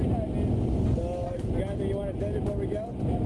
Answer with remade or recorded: recorded